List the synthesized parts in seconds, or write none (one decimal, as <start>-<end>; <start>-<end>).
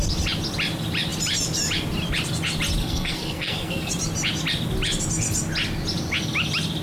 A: 2.8-3.9